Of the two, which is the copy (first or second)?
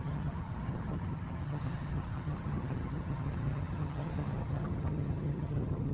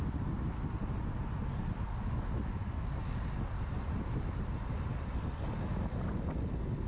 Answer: first